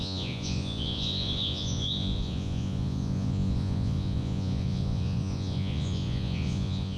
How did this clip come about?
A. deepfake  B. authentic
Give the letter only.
A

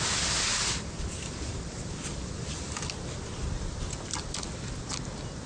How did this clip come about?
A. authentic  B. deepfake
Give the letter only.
A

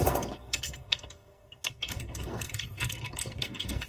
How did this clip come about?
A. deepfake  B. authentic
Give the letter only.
A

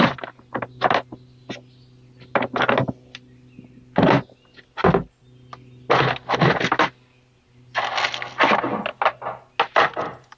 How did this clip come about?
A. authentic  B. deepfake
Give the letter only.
A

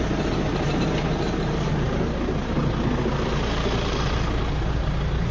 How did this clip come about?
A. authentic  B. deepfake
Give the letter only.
A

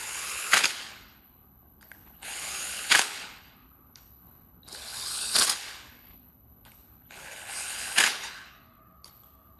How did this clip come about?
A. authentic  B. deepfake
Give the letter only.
B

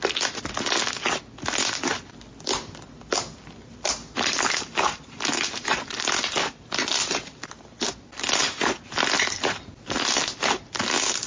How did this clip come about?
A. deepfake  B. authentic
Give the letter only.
B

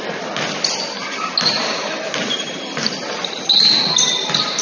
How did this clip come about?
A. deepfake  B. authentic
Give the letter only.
B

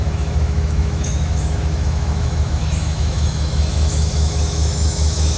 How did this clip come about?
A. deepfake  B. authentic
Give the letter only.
A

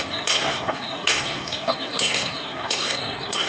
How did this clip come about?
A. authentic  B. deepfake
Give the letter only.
B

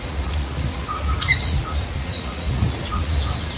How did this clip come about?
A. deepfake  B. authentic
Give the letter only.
A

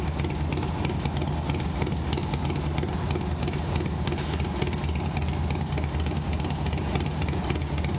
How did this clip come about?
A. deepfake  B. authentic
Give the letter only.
B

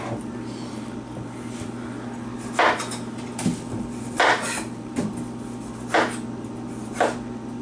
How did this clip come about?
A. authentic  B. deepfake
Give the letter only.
A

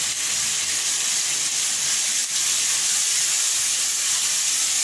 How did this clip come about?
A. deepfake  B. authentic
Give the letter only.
B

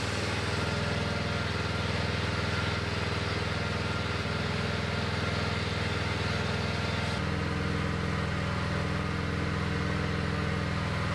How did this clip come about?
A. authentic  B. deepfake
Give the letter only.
A